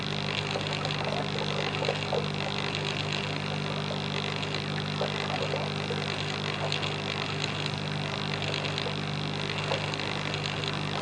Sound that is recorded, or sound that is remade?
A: recorded